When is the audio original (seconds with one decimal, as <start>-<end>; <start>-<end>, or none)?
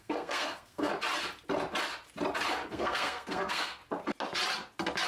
0.9-2.7; 3.8-5.1